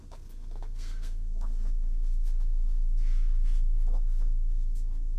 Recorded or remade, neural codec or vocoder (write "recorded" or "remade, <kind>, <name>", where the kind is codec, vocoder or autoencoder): remade, codec, SNAC